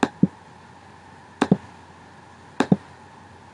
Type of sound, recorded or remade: recorded